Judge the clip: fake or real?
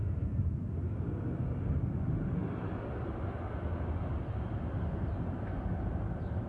real